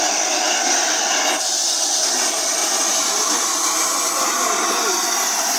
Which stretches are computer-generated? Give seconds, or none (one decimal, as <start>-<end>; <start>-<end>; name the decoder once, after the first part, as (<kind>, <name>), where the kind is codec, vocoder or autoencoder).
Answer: none